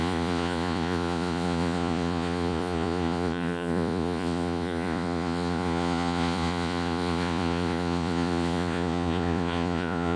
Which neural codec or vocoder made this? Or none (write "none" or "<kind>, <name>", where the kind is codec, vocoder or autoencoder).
vocoder, Vocos